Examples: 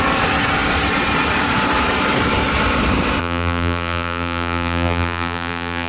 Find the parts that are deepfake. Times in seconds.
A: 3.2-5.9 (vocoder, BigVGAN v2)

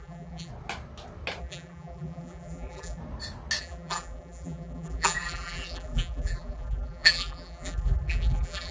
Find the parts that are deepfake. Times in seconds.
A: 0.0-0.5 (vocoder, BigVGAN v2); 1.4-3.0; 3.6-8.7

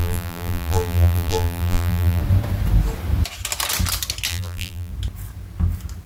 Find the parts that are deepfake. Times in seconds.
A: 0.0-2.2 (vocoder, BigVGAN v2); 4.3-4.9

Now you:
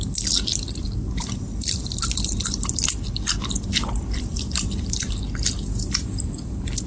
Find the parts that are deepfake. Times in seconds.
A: 0.5-1.4 (vocoder, BigVGAN v2); 3.7-5.2

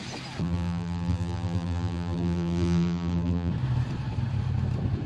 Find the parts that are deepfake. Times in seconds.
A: 0.4-3.5 (vocoder, BigVGAN v2)